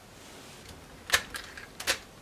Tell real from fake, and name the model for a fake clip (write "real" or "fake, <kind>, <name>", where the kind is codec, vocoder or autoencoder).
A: real